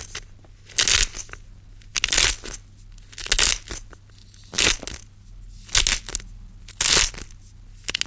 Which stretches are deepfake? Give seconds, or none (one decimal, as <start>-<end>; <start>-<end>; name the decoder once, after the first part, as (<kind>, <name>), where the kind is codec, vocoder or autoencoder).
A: none